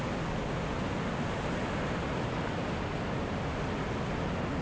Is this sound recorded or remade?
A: recorded